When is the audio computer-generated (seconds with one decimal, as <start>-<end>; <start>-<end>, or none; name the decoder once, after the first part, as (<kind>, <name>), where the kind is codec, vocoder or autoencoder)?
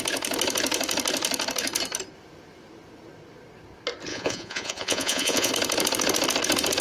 4.1-5.5 (vocoder, Vocos)